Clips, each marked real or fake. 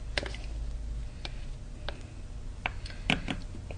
real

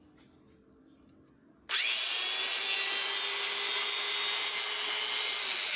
real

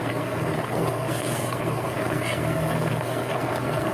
fake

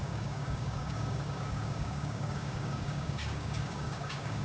fake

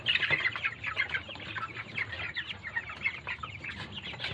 real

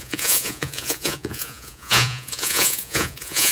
fake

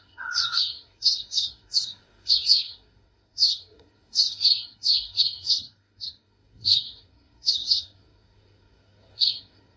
fake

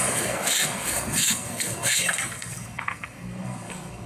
fake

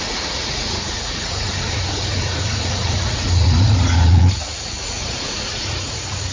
fake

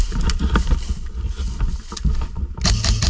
real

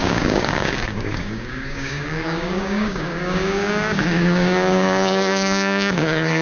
fake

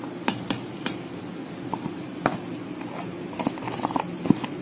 real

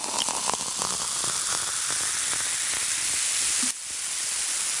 real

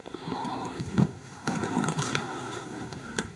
fake